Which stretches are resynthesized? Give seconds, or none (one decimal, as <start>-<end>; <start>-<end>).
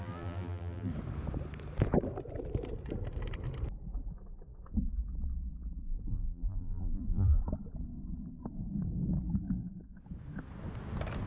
0.0-0.9; 6.1-7.4